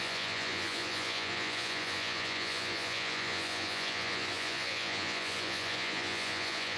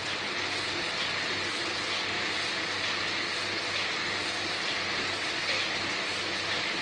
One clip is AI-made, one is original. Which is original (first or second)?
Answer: second